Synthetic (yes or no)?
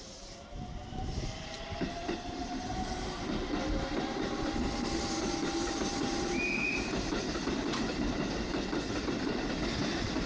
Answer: yes